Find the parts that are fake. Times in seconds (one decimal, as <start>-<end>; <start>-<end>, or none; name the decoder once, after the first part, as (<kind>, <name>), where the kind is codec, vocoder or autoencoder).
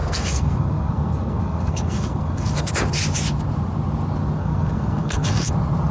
0.0-2.7 (codec, SNAC); 4.4-5.5